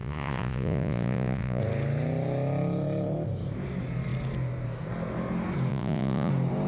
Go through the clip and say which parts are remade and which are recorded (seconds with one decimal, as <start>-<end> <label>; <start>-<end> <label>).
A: 0.0-1.6 remade; 1.6-5.7 recorded; 5.7-6.3 remade; 6.3-6.7 recorded